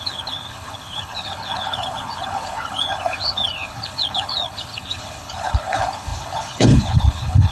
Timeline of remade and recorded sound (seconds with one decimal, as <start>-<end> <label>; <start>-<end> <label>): 0.0-7.5 remade